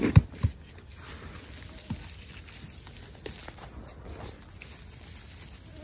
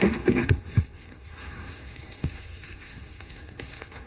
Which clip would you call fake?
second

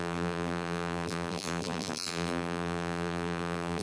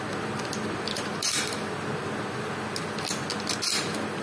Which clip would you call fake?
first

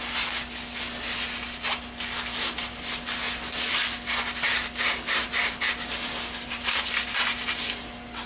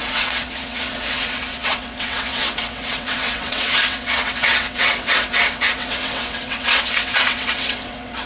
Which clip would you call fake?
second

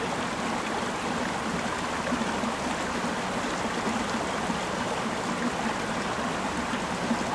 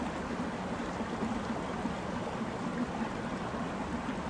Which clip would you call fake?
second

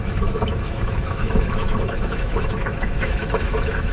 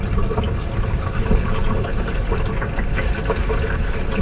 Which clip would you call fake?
first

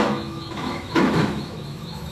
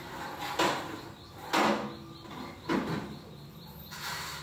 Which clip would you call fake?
first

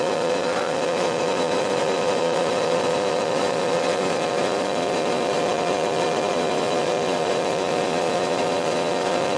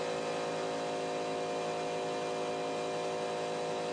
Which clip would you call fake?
first